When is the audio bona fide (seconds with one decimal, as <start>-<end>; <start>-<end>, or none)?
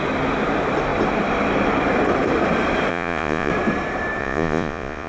0.0-2.9; 3.5-4.2